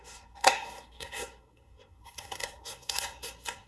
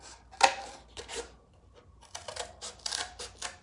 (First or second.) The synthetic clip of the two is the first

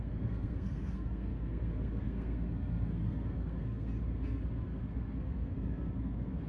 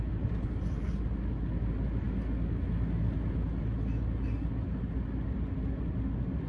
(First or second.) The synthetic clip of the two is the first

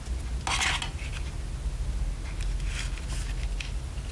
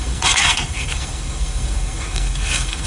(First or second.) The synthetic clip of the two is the second